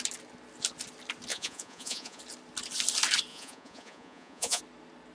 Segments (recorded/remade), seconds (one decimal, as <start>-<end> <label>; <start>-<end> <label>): 0.0-1.3 recorded; 1.3-2.2 remade; 2.2-3.3 recorded; 3.3-4.6 remade; 4.6-5.1 recorded